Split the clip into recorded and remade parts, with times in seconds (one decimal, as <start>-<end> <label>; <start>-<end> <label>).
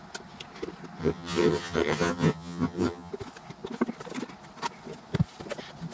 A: 0.0-1.0 recorded; 1.0-3.1 remade; 3.1-5.9 recorded